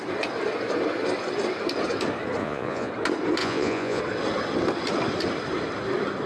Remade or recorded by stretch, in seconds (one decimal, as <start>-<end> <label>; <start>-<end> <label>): 0.0-2.4 recorded; 2.4-2.9 remade; 2.9-3.4 recorded; 3.4-4.0 remade; 4.0-6.3 recorded